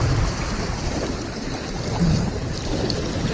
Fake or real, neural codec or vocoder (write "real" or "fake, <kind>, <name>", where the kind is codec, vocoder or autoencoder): real